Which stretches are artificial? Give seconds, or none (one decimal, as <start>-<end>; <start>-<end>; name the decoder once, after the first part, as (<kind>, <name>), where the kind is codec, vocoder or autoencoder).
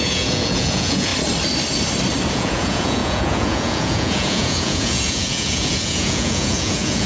0.0-1.1 (vocoder, Vocos); 2.3-7.1